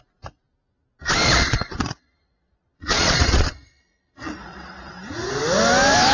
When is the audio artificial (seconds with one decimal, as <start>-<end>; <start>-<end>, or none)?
1.2-4.9